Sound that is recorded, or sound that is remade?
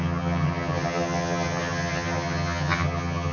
remade